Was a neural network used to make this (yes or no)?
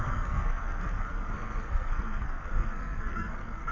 yes